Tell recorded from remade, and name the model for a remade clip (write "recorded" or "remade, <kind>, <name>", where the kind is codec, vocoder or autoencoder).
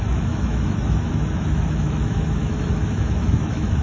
remade, autoencoder, DAC-VAE